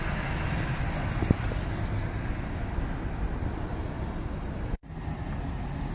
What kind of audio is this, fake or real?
real